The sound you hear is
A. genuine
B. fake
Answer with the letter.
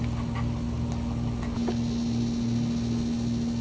A